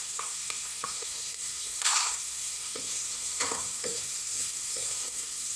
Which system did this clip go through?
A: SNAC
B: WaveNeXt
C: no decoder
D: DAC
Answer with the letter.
A